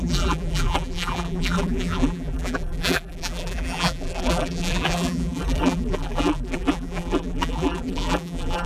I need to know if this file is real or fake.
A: fake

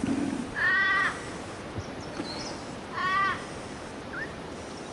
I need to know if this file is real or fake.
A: real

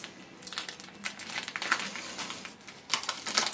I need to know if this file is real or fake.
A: fake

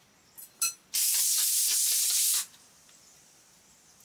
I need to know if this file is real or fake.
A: fake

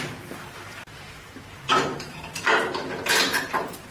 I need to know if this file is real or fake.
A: fake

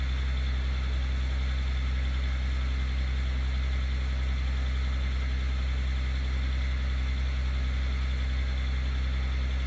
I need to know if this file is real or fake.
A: real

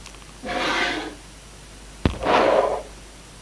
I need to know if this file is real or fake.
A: real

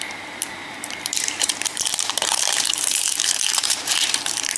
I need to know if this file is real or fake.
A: fake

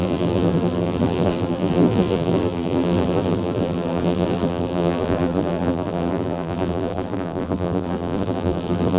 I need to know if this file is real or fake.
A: fake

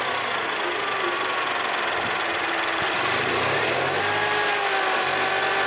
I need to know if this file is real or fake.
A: real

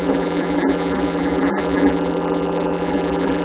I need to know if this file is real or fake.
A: fake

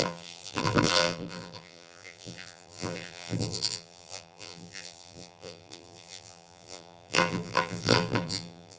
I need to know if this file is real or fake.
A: fake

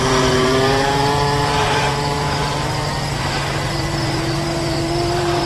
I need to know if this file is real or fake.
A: fake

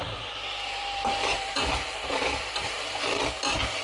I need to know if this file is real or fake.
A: fake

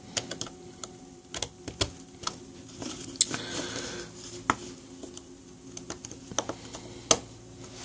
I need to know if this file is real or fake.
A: real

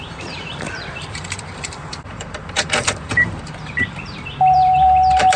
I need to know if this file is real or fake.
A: fake